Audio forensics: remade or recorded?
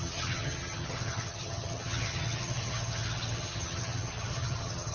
remade